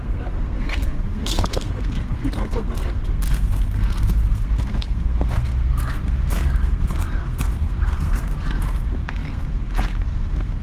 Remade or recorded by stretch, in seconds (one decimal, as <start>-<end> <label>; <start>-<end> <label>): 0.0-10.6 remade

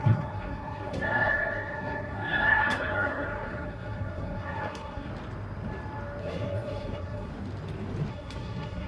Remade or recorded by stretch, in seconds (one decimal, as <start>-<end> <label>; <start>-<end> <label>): 0.0-5.1 remade; 5.1-6.2 recorded; 6.2-7.3 remade; 7.3-8.1 recorded; 8.1-8.9 remade

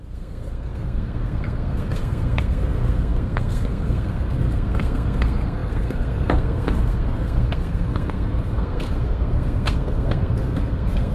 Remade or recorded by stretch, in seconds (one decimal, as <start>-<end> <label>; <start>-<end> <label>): 0.0-11.1 remade

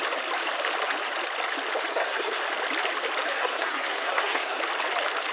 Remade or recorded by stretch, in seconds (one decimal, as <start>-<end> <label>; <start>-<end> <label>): 0.0-1.9 recorded; 1.9-2.4 remade; 2.4-3.3 recorded; 3.3-4.6 remade; 4.6-5.3 recorded

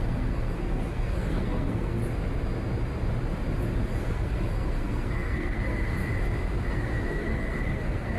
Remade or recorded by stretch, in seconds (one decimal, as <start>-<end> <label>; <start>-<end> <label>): 0.0-2.0 remade; 2.0-3.9 recorded; 3.9-6.0 remade; 6.0-6.7 recorded; 6.7-8.2 remade